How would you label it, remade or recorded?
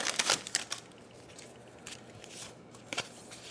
recorded